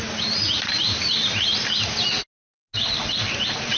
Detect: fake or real real